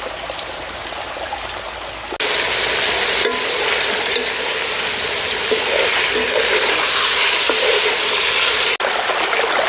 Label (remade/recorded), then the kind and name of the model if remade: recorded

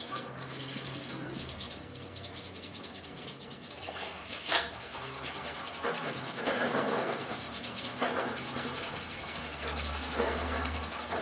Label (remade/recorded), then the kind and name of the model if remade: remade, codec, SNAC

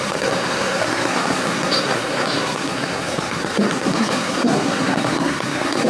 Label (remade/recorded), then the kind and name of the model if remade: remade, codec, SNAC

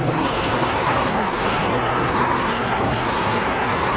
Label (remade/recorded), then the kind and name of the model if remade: remade, codec, SNAC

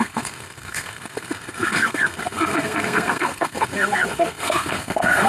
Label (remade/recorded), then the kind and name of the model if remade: remade, codec, SNAC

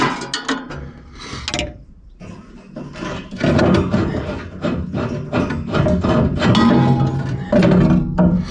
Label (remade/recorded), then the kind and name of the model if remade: recorded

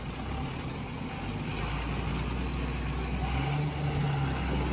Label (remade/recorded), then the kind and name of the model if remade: recorded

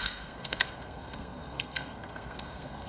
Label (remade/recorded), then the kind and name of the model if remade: remade, codec, SNAC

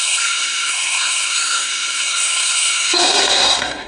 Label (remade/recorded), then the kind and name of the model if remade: remade, codec, SNAC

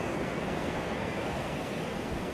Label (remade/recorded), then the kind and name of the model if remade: remade, codec, SNAC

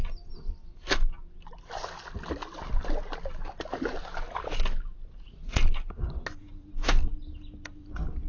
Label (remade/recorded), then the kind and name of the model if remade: recorded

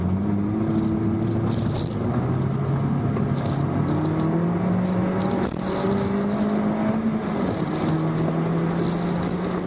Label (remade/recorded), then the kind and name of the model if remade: recorded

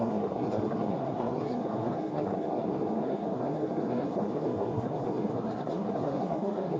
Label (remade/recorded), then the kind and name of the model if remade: remade, codec, SNAC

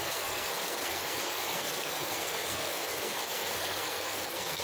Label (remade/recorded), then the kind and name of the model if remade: remade, codec, SNAC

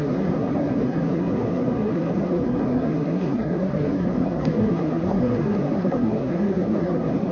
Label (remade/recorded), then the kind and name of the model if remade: remade, codec, SNAC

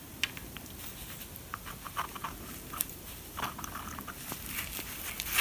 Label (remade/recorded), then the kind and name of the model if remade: recorded